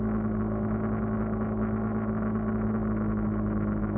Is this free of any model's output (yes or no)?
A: yes